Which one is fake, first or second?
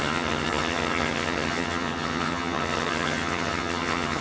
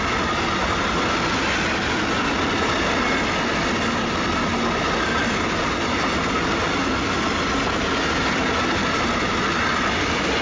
first